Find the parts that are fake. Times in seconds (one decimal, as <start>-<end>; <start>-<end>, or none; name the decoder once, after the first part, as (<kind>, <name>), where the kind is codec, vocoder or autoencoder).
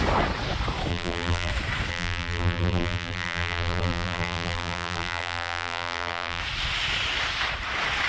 0.9-1.5 (vocoder, BigVGAN v2); 1.9-6.4